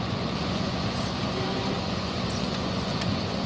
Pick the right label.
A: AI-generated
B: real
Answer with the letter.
A